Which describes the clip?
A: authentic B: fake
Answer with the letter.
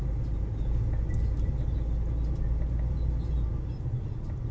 A